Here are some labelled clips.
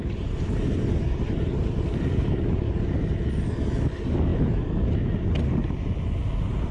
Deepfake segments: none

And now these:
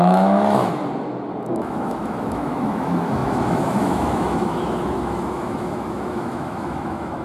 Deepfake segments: 0.0-0.8; 1.5-7.2

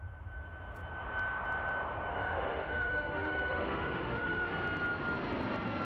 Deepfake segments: 2.1-4.5